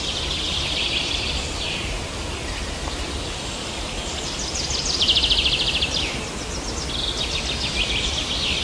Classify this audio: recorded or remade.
remade